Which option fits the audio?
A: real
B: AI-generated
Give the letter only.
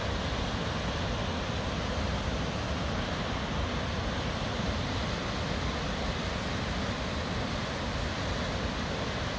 A